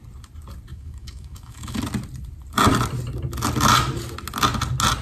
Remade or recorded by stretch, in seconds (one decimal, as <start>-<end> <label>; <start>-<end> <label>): 0.0-0.7 recorded; 0.7-1.8 remade; 1.8-5.0 recorded